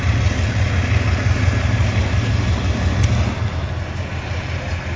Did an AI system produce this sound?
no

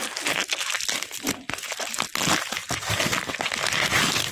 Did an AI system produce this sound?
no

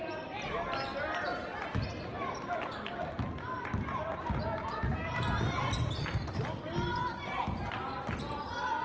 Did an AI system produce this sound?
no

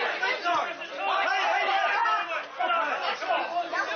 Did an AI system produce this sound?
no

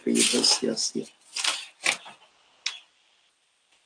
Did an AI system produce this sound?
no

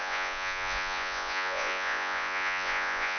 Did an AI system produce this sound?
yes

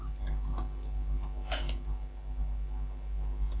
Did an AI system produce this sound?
no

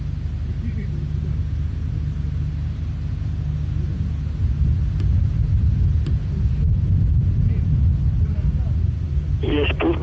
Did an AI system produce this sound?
no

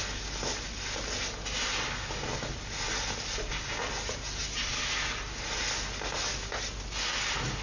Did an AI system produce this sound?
no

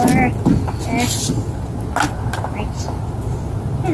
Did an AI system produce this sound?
no